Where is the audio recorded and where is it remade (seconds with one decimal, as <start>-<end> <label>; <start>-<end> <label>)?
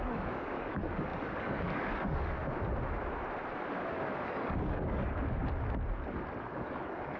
0.0-2.4 remade; 2.4-4.3 recorded; 4.3-5.4 remade; 5.4-6.4 recorded; 6.4-7.2 remade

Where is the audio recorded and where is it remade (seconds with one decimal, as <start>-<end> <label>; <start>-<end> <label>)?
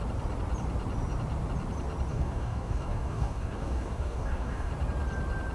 0.0-2.1 recorded; 2.1-4.7 remade; 4.7-5.5 recorded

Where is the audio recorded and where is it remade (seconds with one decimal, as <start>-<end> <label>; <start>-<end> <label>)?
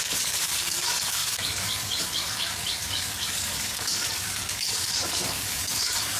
0.0-6.2 remade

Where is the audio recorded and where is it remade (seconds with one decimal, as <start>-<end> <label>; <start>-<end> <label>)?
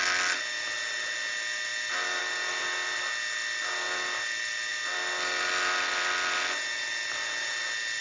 0.0-8.0 recorded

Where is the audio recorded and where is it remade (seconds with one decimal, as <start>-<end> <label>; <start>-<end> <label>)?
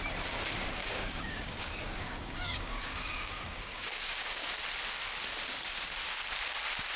0.0-0.8 recorded; 0.8-4.5 remade; 4.5-7.0 recorded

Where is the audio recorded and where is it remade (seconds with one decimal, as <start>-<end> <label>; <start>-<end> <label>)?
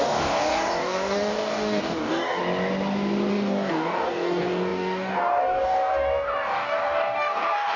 0.0-2.4 remade; 2.4-3.3 recorded; 3.3-7.8 remade